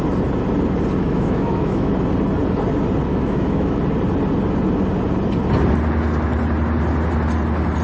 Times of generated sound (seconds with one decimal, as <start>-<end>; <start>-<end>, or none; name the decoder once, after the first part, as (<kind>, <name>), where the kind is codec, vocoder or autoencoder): 1.0-1.9 (autoencoder, DAC-VAE); 3.1-3.8